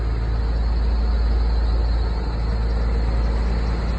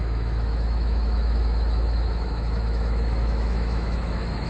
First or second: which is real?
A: first